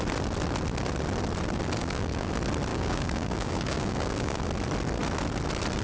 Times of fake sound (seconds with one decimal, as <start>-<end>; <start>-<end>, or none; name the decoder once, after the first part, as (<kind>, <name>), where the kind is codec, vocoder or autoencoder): 1.8-2.3 (codec, DAC); 2.7-4.4